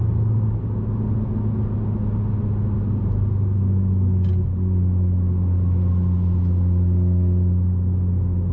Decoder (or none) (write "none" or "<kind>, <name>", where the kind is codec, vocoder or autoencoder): none